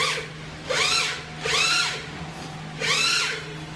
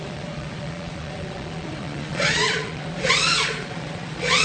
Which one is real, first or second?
first